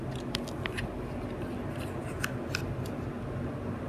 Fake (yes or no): no